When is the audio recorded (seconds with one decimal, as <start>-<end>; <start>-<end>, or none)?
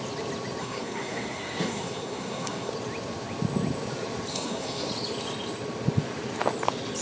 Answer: 0.0-0.6; 2.7-4.3; 4.9-7.0